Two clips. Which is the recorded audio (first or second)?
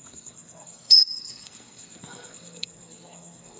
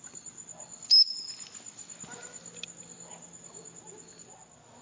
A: second